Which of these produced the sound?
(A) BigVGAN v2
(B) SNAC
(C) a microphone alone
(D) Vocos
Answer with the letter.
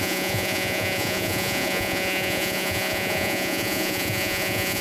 D